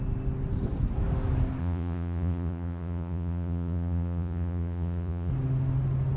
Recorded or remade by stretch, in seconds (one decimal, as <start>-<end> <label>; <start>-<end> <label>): 0.0-1.6 recorded; 1.6-5.3 remade; 5.3-6.2 recorded